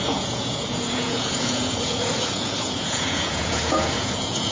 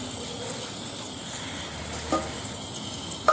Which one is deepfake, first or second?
first